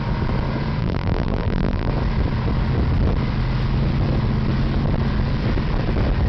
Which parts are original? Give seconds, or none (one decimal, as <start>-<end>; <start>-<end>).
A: 0.0-0.8; 1.9-6.3